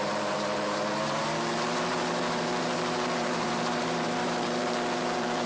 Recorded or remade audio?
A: remade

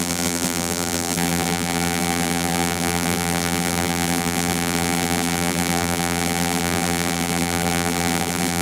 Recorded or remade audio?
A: remade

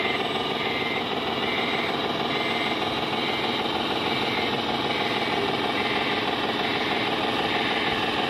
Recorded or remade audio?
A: recorded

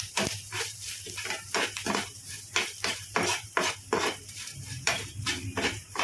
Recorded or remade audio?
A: remade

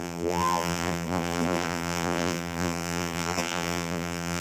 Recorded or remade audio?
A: remade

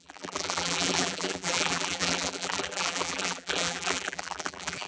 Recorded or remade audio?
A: remade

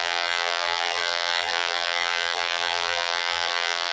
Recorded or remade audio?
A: remade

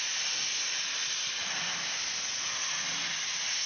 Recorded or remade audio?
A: remade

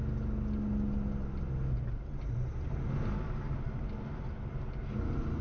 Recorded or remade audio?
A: recorded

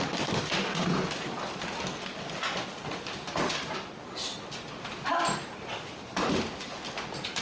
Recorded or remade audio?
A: remade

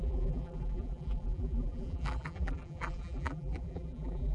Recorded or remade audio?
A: remade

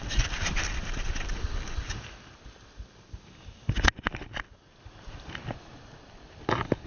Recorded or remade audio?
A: recorded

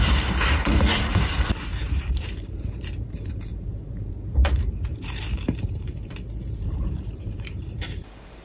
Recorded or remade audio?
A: remade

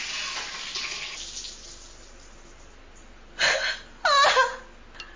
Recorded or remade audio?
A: recorded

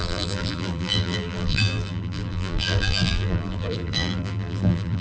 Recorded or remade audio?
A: remade